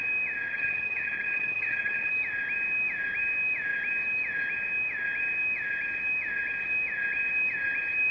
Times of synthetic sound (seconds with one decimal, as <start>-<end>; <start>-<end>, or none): 0.5-2.1